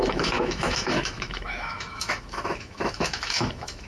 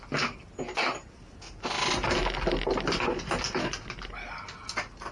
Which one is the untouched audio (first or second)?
second